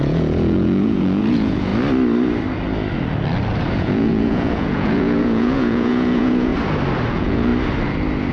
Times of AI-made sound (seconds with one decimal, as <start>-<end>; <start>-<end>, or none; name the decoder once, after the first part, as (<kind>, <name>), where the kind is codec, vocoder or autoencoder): 0.0-1.7 (vocoder, Vocos); 3.7-6.5; 7.1-7.5